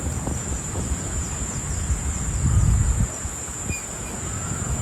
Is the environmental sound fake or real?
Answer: fake